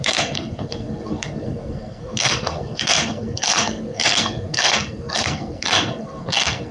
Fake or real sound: fake